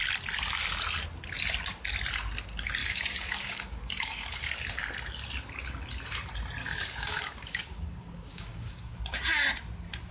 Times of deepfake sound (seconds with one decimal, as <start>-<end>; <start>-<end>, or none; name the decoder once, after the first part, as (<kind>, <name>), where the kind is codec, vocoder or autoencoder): 2.8-4.5 (codec, DAC); 6.6-9.0